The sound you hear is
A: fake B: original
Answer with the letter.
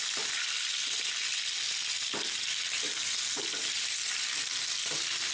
B